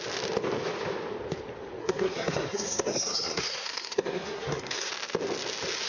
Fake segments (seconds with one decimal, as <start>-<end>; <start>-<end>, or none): 1.8-4.9